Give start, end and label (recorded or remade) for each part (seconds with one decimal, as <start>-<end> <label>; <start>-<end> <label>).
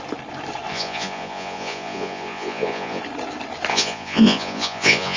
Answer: 0.0-0.7 recorded; 0.7-3.0 remade; 3.0-3.7 recorded; 3.7-5.2 remade